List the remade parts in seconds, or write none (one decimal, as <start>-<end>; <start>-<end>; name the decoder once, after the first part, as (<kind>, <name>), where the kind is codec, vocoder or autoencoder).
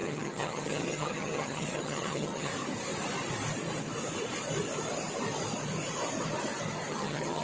0.0-2.5 (vocoder, HiFi-GAN); 6.9-7.4